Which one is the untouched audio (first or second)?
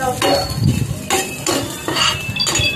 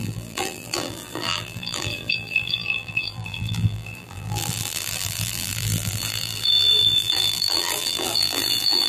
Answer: first